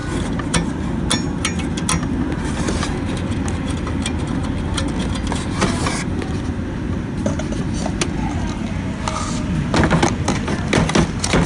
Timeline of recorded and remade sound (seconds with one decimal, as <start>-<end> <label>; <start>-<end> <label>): 0.0-11.5 recorded